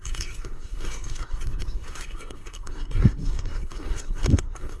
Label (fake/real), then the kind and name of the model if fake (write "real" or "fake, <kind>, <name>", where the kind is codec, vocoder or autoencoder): fake, codec, SNAC